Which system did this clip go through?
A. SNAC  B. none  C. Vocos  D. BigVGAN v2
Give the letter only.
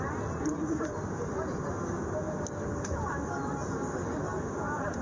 B